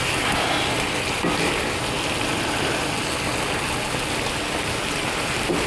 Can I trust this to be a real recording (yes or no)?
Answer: yes